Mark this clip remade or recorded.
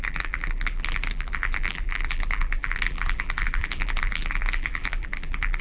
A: remade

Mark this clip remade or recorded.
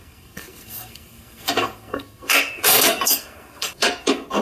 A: remade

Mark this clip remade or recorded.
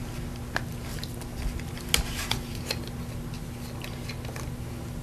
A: recorded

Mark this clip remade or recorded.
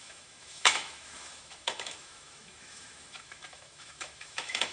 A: remade